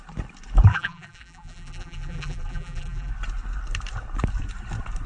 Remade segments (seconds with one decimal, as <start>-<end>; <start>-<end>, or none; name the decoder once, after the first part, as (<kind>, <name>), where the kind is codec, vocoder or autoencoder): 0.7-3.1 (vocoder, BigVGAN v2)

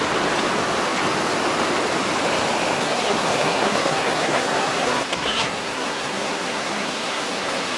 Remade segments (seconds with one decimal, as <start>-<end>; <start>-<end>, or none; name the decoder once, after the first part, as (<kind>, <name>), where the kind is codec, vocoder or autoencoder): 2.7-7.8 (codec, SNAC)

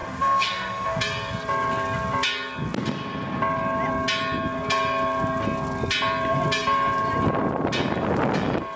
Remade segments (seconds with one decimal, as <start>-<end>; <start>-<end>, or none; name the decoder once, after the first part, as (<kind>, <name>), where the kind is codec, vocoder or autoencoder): 0.0-1.0 (autoencoder, DAC-VAE)

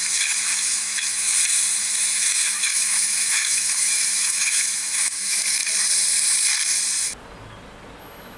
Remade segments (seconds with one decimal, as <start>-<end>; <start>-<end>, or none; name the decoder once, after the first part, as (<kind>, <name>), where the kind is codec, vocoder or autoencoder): 0.0-1.3 (autoencoder, DAC-VAE); 1.8-5.6; 8.0-8.4